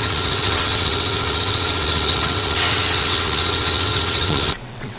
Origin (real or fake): fake